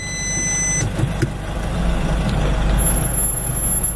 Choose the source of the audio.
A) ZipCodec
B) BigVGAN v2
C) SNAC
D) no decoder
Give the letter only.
D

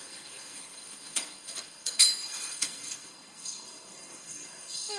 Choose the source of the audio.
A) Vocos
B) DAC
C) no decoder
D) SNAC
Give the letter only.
D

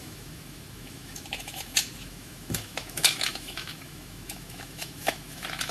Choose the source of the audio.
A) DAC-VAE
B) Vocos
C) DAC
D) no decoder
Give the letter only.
A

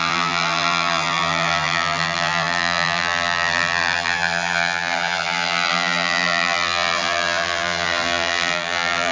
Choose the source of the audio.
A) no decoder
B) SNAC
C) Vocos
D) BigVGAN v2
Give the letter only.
D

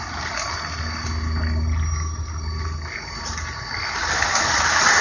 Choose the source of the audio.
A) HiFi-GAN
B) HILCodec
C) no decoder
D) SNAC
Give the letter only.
C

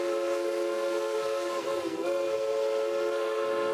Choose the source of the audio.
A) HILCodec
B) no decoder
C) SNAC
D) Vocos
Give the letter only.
C